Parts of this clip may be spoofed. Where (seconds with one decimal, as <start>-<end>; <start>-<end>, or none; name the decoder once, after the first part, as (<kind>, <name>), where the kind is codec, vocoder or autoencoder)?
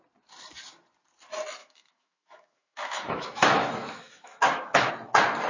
1.6-4.9 (autoencoder, DAC-VAE)